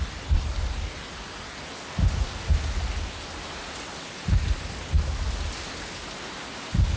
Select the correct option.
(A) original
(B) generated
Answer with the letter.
A